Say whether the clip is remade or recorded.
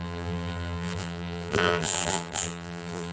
remade